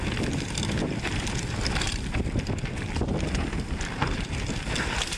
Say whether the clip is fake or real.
real